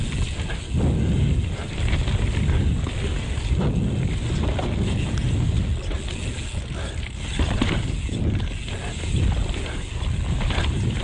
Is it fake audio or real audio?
real